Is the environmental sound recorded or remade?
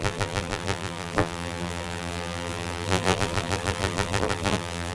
remade